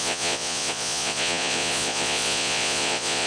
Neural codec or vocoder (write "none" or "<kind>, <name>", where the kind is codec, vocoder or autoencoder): vocoder, Vocos